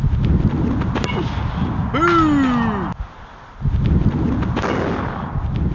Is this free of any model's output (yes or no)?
yes